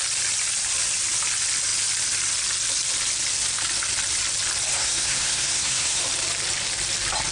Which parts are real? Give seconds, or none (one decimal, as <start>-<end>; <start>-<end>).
0.0-4.7; 6.0-7.3